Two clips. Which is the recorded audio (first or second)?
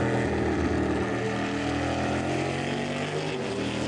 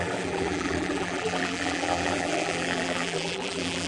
first